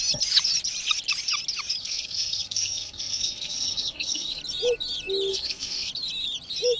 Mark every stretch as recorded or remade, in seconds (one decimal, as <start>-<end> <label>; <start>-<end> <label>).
0.0-1.8 recorded; 1.8-4.4 remade; 4.4-5.3 recorded; 5.3-5.9 remade; 5.9-6.8 recorded